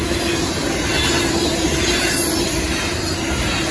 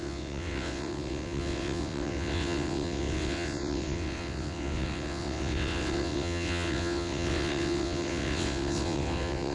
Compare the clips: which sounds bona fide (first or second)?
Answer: first